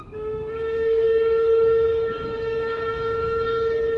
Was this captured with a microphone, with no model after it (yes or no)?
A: no